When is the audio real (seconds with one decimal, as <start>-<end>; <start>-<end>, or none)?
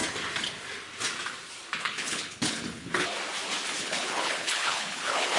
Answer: 0.0-1.8; 3.1-3.8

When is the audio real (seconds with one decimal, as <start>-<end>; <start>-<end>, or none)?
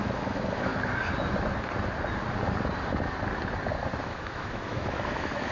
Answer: 0.7-4.0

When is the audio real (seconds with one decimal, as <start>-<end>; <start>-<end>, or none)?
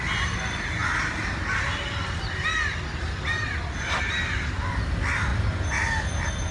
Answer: 0.0-5.3; 5.9-6.5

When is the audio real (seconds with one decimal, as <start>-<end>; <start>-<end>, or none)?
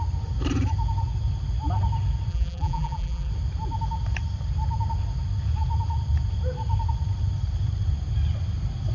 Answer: 0.0-2.3; 3.3-8.9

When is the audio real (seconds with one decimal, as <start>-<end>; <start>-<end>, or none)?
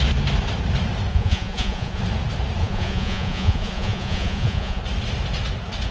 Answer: 0.0-1.1; 2.0-2.6; 4.8-5.9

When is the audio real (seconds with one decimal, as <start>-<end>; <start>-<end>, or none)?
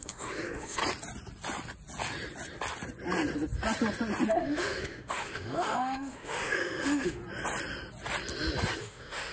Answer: 0.8-4.3; 7.2-8.8